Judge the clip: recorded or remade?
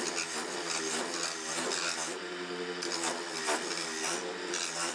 recorded